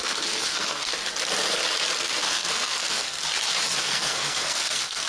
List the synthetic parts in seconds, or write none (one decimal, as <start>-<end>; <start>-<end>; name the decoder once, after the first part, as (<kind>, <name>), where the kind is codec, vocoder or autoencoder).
0.0-0.9 (codec, SNAC); 2.0-3.2; 3.8-5.1